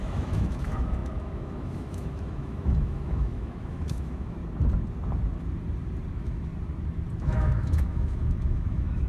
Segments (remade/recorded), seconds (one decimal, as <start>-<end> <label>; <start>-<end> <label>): 0.0-4.4 remade; 4.4-6.1 recorded; 6.1-6.5 remade; 6.5-7.2 recorded; 7.2-9.1 remade